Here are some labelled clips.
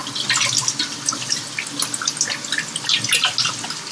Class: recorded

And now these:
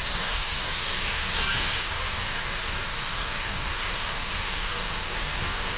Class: remade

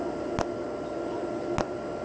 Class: recorded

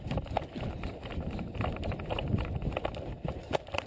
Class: recorded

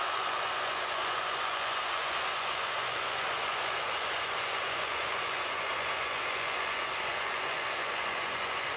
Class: remade